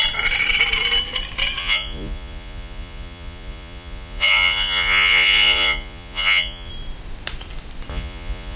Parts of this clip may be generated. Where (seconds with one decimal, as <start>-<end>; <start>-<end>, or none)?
1.6-6.7; 7.9-8.6